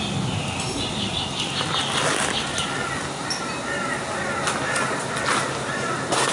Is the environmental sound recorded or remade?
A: recorded